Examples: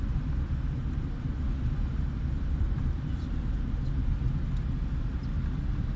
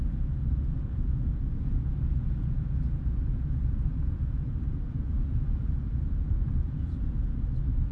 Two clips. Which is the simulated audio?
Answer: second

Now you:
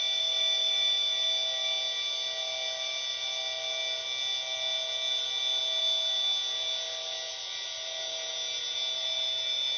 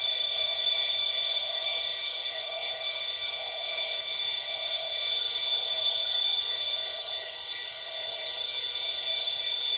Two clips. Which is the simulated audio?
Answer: second